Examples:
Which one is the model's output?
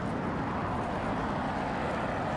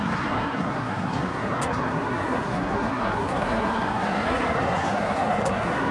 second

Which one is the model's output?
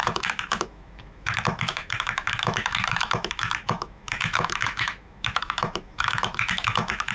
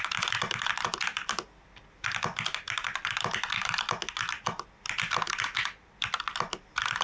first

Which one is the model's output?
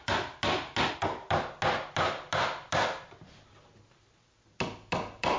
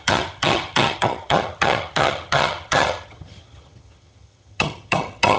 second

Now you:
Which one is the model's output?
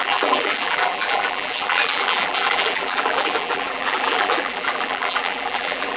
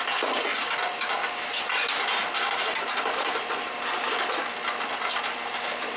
first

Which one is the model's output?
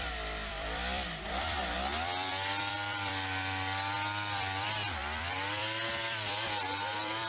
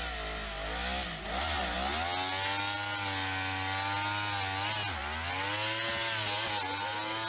first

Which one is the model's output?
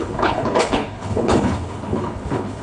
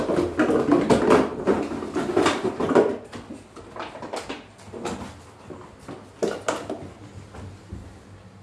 first